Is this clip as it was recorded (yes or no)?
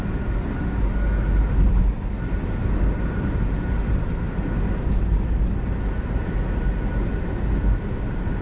yes